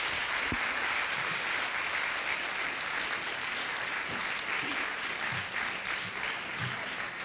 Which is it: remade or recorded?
recorded